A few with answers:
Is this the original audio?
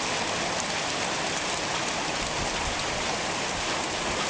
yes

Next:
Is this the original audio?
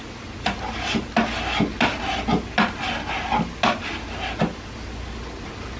yes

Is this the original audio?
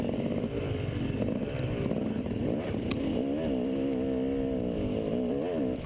yes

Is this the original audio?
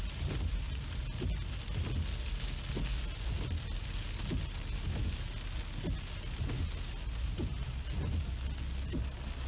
yes